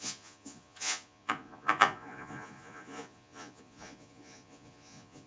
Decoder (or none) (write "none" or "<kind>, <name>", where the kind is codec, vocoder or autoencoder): vocoder, Vocos